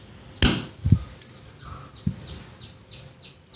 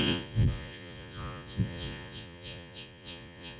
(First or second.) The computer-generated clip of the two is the second